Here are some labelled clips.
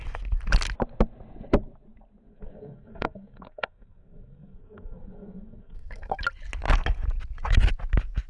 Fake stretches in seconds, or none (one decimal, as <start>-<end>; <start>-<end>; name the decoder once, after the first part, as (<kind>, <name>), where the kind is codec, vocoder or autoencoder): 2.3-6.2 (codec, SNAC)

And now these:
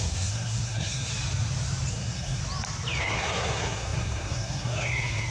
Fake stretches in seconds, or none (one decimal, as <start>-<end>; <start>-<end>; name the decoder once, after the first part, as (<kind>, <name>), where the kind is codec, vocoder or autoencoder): 0.0-1.1 (codec, SNAC); 1.9-2.4; 3.0-5.3

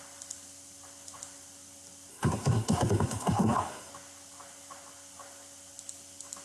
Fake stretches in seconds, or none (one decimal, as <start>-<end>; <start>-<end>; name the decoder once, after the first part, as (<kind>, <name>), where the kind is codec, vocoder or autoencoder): 2.1-3.9 (codec, SNAC)

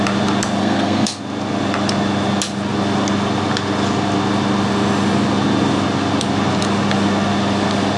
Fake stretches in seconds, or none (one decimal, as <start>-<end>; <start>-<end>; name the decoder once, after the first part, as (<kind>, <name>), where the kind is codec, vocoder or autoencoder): 0.6-1.2 (codec, SNAC)

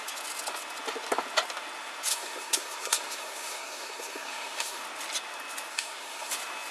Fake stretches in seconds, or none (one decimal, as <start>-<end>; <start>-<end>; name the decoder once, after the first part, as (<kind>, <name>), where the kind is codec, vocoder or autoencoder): 2.1-4.8 (codec, SNAC); 5.7-6.3

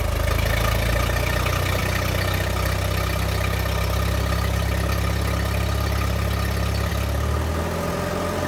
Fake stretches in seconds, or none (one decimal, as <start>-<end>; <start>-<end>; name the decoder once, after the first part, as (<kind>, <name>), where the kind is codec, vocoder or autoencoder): none

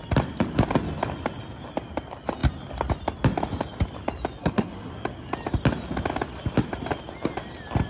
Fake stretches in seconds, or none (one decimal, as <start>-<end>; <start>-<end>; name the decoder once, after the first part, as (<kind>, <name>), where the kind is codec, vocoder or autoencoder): 4.4-4.9 (codec, SNAC)